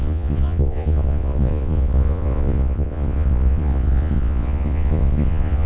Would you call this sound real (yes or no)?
no